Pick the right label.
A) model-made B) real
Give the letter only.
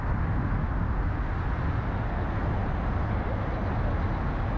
B